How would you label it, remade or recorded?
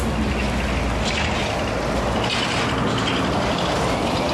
recorded